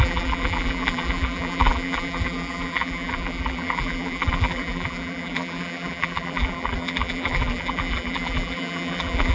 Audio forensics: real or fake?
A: fake